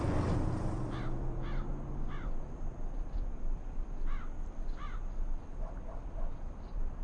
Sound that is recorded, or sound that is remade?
remade